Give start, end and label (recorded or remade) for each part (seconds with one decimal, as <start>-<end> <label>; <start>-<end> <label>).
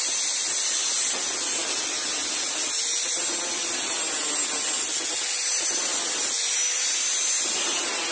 0.0-8.1 recorded